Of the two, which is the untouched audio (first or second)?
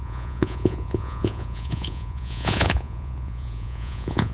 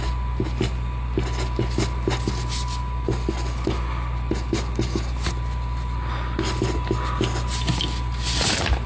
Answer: second